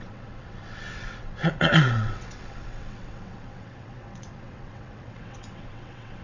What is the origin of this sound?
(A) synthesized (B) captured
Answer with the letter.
A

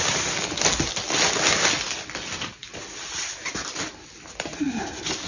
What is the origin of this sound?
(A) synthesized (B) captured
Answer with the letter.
B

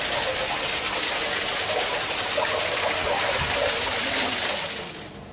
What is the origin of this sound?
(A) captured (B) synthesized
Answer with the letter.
A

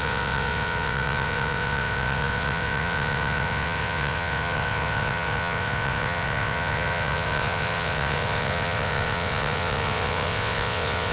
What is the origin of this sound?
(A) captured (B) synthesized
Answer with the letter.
B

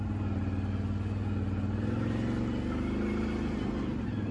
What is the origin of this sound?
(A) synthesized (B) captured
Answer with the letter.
B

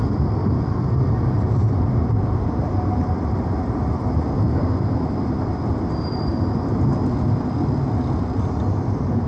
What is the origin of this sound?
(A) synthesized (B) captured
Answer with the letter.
B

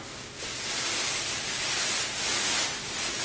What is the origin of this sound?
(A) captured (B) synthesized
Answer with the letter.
A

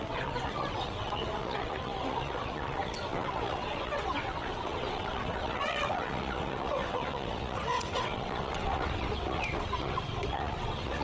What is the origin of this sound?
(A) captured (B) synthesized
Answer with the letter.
B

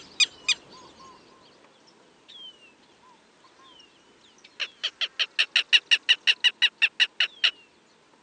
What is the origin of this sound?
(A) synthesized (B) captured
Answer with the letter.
B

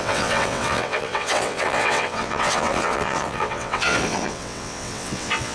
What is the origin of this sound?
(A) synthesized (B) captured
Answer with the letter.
A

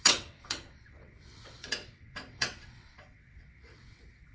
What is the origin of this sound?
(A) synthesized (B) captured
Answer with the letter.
A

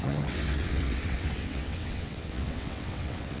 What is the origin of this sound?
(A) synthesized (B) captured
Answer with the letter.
A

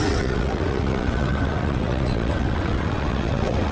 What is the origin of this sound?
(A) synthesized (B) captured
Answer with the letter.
A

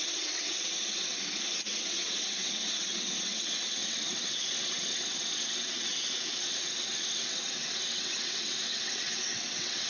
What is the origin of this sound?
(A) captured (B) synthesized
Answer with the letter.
B